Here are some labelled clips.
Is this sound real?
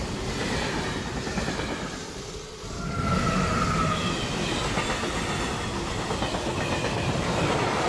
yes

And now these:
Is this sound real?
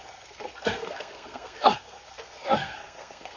no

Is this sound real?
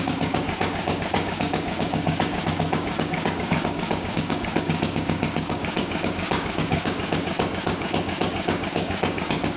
no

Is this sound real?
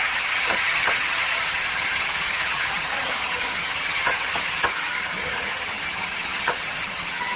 no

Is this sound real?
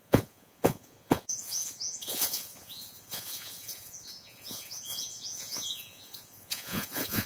no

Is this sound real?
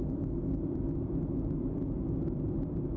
yes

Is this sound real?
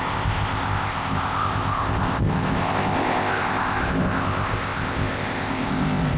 no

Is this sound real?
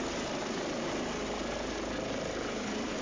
yes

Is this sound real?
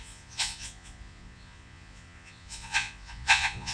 no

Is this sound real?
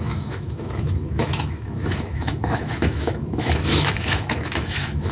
no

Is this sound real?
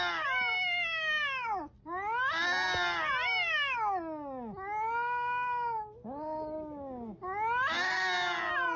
yes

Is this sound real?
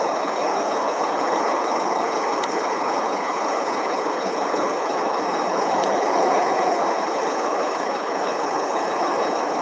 no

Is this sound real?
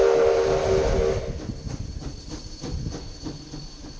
yes